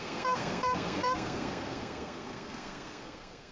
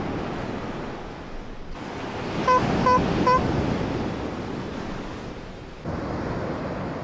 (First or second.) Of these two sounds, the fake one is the first